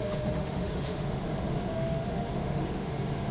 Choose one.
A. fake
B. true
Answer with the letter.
A